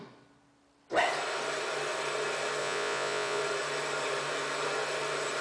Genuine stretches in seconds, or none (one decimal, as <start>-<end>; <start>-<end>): 0.0-2.6; 3.4-5.4